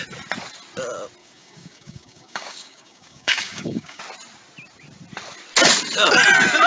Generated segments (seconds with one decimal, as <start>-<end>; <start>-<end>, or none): 1.2-4.0